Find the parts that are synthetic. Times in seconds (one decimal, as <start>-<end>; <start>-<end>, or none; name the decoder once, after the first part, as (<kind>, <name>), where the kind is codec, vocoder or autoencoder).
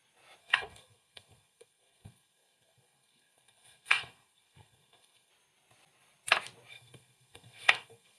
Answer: 0.4-5.3 (codec, SNAC); 6.7-8.2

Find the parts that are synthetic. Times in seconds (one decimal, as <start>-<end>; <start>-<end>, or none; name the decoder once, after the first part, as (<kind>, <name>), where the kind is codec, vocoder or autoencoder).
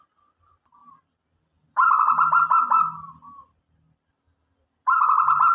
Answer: none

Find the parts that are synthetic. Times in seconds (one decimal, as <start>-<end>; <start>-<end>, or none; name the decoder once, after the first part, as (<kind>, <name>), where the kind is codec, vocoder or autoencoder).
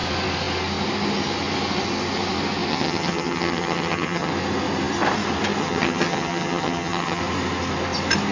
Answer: 2.7-4.3 (vocoder, HiFi-GAN); 5.6-7.2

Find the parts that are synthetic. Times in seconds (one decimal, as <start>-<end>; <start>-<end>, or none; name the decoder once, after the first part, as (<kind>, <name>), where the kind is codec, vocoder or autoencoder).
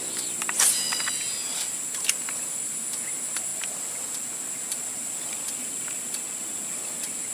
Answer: 3.5-4.1 (vocoder, BigVGAN v2)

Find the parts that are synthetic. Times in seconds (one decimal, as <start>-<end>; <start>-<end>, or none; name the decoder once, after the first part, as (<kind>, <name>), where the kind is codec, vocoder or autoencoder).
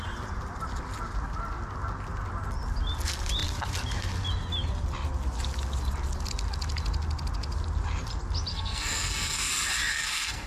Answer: 8.5-9.5 (codec, SNAC); 9.9-10.5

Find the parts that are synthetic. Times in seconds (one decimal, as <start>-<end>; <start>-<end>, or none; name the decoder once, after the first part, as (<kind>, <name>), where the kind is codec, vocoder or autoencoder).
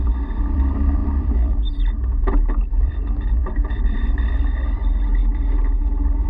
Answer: 0.0-5.2 (vocoder, BigVGAN v2); 5.8-6.3